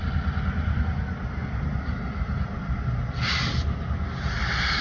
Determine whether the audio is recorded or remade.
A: recorded